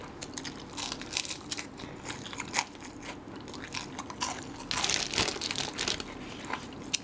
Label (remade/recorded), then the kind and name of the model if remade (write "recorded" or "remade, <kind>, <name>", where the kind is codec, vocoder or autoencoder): recorded